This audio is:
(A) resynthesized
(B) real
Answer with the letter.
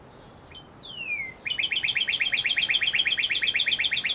B